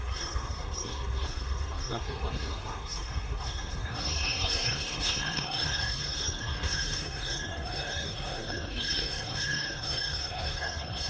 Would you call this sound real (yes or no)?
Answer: no